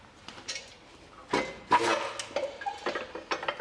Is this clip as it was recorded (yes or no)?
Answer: yes